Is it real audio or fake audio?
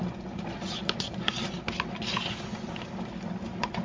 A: real